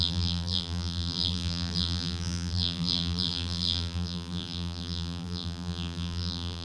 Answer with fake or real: fake